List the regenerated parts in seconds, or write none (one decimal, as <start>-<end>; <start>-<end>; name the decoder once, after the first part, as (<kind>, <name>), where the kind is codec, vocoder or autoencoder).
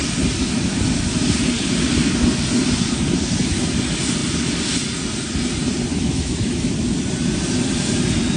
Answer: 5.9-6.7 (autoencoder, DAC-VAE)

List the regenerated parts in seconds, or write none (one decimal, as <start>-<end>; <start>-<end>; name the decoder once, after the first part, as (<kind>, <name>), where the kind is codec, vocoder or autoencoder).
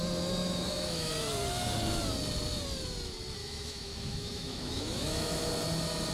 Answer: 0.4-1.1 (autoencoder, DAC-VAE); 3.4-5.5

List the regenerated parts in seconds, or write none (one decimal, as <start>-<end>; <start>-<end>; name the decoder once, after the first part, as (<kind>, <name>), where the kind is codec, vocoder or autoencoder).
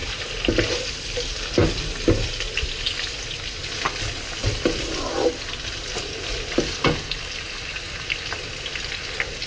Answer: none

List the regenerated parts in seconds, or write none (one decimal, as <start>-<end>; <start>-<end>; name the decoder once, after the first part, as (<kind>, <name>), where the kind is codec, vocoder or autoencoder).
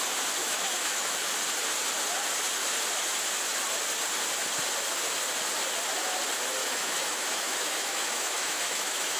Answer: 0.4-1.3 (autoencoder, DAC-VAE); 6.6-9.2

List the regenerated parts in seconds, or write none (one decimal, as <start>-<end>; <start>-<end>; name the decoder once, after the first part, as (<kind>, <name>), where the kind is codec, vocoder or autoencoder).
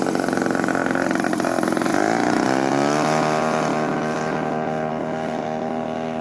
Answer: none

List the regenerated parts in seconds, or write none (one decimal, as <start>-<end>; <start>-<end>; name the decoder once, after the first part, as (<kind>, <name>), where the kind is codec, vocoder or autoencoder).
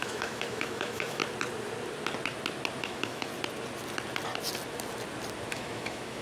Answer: 0.0-1.2 (autoencoder, DAC-VAE); 2.8-3.3; 5.5-6.2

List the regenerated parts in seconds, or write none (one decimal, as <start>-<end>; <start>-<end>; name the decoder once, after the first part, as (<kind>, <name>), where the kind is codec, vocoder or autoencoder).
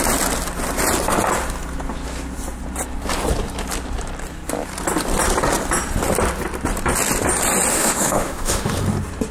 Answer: 7.7-8.7 (autoencoder, DAC-VAE)